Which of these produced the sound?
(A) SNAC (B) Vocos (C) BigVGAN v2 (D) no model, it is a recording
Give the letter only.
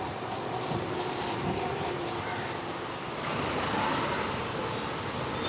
D